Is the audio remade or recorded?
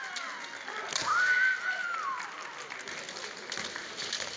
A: recorded